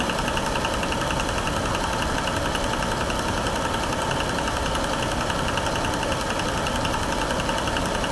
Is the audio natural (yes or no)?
yes